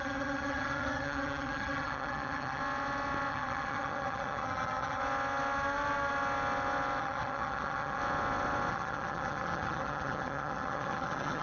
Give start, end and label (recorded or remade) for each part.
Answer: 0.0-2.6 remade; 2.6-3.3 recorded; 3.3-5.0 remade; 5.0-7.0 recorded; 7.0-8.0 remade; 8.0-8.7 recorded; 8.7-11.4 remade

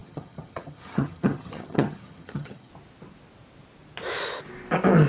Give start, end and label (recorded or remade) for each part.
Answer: 0.0-2.7 remade; 2.7-5.1 recorded

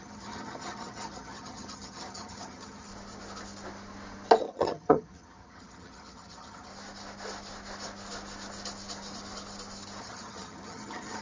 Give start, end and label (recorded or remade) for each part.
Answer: 0.0-2.9 remade; 2.9-4.4 recorded; 4.4-6.7 remade; 6.7-10.0 recorded; 10.0-11.2 remade

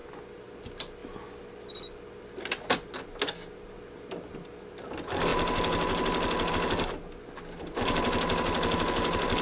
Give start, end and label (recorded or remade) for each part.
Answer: 0.0-9.4 recorded

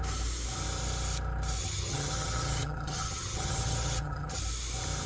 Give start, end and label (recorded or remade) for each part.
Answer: 0.0-1.6 recorded; 1.6-4.4 remade; 4.4-5.1 recorded